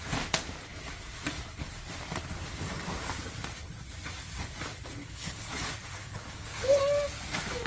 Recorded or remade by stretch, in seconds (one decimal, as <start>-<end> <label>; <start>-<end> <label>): 0.0-5.0 recorded; 5.0-5.5 remade; 5.5-6.0 recorded; 6.0-6.8 remade; 6.8-7.7 recorded